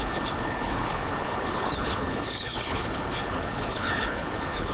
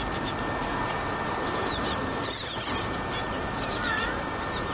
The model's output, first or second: first